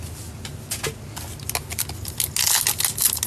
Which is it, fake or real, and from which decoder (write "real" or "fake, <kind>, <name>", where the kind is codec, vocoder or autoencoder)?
real